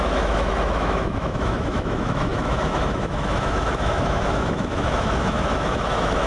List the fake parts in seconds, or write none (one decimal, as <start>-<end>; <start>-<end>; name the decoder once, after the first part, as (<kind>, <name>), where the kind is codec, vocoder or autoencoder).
0.0-6.3 (autoencoder, DAC-VAE)